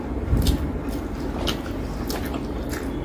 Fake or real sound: real